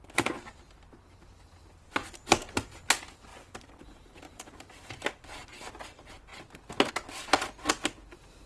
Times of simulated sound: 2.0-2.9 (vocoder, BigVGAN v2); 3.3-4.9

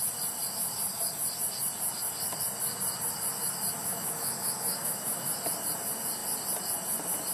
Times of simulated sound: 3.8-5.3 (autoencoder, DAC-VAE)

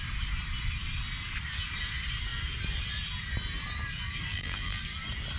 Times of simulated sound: 4.3-4.8 (vocoder, BigVGAN v2)

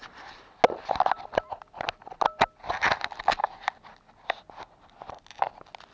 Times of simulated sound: none

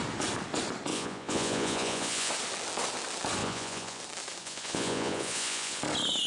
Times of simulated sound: 0.9-2.3 (vocoder, Vocos); 3.4-4.0; 4.4-5.8